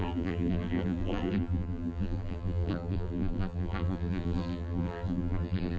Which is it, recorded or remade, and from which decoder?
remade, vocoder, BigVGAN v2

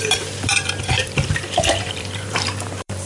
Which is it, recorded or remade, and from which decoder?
remade, vocoder, BigVGAN v2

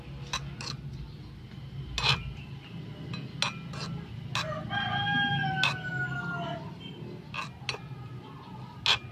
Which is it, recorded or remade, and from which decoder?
recorded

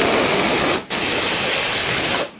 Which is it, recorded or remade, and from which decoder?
recorded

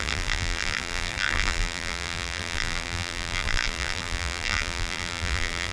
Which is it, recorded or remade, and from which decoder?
remade, vocoder, BigVGAN v2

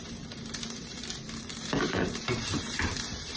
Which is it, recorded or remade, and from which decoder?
remade, vocoder, BigVGAN v2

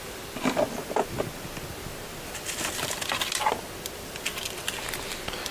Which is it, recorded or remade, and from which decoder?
recorded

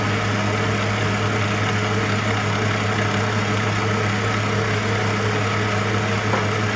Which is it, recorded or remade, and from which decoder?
recorded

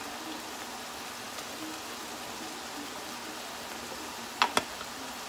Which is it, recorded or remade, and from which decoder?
recorded